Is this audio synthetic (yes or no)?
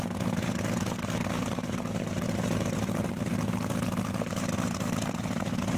yes